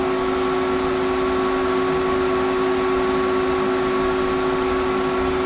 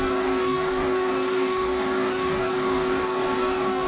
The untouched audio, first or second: first